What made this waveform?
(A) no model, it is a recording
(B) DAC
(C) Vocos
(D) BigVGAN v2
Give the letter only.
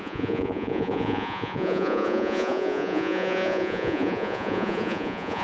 C